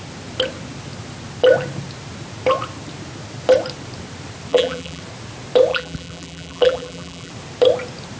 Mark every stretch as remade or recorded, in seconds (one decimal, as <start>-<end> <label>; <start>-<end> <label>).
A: 0.0-4.5 recorded; 4.5-5.0 remade; 5.0-5.7 recorded; 5.7-7.3 remade; 7.3-8.2 recorded